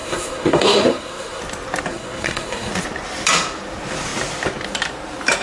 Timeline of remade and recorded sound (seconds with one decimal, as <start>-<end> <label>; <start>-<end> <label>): 0.0-1.4 remade; 1.4-1.9 recorded; 1.9-2.7 remade; 2.7-5.4 recorded